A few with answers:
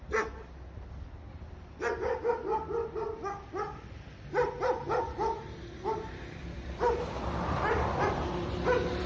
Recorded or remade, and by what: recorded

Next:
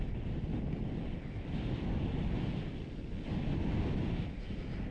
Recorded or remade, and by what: recorded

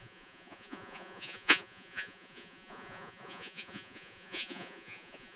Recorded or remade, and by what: remade, vocoder, Vocos